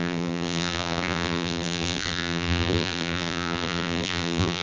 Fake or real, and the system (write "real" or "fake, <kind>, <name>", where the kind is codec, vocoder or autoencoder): fake, vocoder, BigVGAN v2